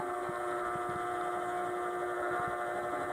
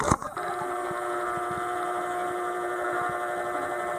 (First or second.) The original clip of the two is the first